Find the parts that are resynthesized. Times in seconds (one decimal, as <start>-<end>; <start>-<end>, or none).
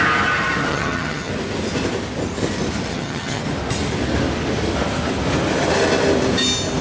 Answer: 0.7-1.3; 2.9-3.4